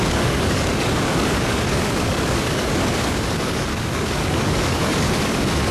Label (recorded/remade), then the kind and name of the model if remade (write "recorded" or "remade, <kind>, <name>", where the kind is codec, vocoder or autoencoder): remade, codec, DAC